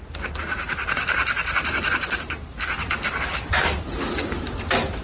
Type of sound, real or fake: real